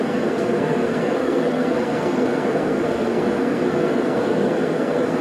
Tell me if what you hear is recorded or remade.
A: remade